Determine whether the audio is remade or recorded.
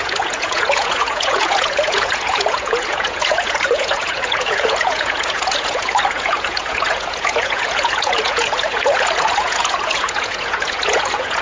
remade